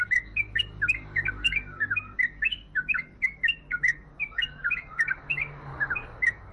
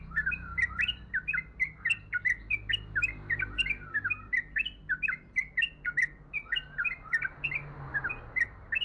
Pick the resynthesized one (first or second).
first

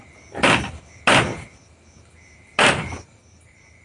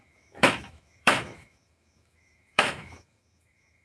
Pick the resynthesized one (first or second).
second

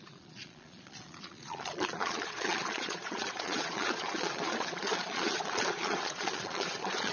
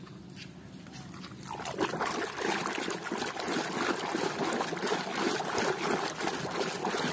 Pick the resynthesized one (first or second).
first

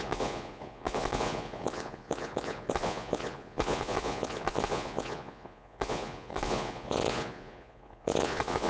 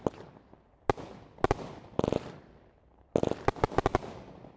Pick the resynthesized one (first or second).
first